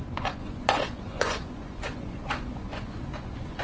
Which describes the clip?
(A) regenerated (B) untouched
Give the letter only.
A